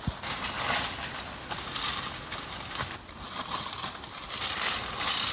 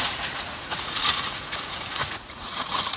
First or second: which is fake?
second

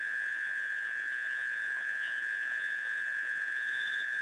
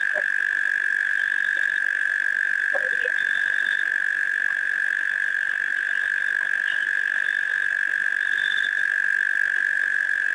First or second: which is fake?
first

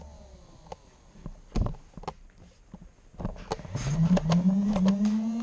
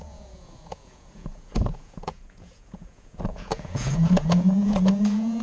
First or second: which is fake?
second